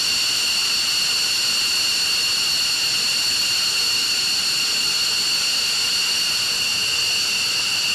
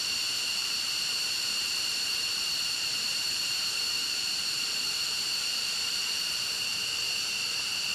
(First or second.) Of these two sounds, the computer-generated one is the second